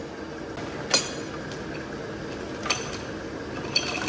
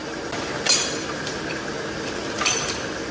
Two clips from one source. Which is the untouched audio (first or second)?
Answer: first